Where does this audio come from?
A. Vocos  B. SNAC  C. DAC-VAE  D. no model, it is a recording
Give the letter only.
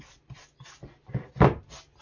D